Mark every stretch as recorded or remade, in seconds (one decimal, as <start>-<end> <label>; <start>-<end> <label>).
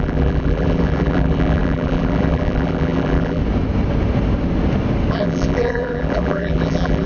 0.0-3.4 remade; 3.4-5.1 recorded; 5.1-7.1 remade